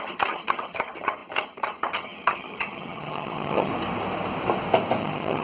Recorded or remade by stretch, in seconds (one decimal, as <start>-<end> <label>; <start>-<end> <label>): 0.0-3.7 remade; 3.7-5.0 recorded; 5.0-5.4 remade